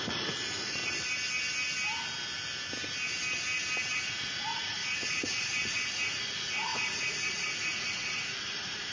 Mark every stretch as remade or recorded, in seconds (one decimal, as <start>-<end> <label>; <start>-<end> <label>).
0.0-0.8 remade; 0.8-3.9 recorded; 3.9-8.9 remade